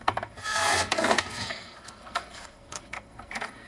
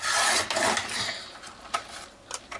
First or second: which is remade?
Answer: first